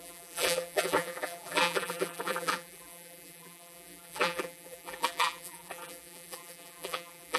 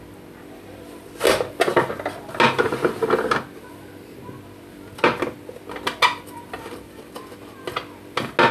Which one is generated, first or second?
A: first